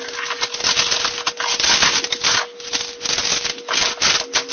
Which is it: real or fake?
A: real